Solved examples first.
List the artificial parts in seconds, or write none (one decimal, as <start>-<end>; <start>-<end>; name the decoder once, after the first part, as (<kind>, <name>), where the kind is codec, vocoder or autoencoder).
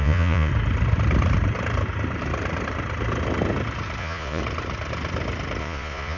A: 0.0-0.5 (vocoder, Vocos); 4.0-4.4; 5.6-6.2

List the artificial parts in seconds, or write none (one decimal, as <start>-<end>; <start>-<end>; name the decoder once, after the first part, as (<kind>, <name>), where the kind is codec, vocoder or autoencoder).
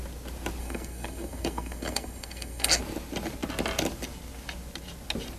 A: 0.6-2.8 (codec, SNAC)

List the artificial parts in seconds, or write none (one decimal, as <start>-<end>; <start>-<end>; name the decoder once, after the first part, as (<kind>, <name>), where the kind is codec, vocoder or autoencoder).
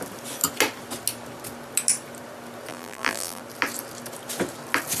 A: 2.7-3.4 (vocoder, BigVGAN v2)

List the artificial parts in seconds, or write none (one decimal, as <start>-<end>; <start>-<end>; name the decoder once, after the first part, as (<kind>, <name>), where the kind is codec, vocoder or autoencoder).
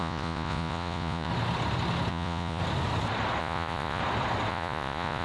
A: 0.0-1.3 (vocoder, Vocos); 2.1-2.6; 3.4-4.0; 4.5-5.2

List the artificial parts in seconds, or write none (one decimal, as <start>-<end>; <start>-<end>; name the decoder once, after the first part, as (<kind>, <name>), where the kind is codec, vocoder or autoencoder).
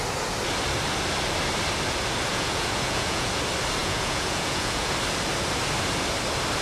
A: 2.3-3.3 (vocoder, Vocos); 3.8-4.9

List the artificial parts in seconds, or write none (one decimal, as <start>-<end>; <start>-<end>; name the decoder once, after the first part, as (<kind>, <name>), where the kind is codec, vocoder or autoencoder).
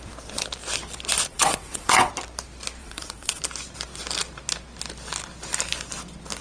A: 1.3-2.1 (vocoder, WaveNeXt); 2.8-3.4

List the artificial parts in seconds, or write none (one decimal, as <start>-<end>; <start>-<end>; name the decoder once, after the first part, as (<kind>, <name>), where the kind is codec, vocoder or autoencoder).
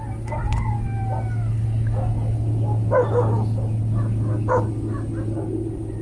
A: none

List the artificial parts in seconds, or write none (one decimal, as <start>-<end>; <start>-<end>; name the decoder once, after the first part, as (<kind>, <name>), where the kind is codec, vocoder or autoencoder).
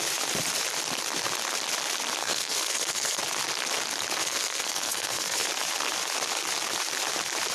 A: 2.2-3.2 (codec, SNAC); 4.2-5.5